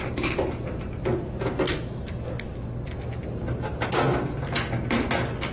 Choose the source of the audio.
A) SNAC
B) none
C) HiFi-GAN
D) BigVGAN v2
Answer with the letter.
B